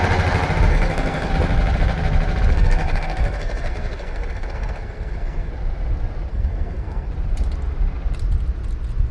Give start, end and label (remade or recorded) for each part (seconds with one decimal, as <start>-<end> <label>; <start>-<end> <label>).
0.0-0.7 recorded; 0.7-1.3 remade; 1.3-2.5 recorded; 2.5-5.5 remade; 5.5-6.3 recorded; 6.3-7.1 remade; 7.1-9.1 recorded